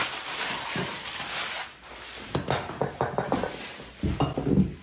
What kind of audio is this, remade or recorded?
recorded